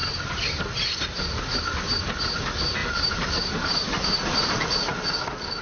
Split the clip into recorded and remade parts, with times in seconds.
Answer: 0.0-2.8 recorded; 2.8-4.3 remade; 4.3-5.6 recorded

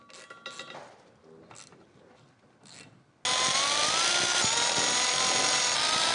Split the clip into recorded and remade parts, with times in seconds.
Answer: 0.0-6.1 recorded

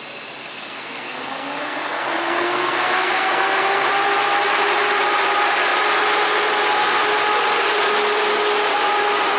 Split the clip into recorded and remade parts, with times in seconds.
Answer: 0.0-0.4 recorded; 0.4-3.9 remade; 3.9-9.4 recorded